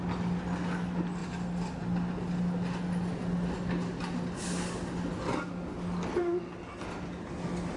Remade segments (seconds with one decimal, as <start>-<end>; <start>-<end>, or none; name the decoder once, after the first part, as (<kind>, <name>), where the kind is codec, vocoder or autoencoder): none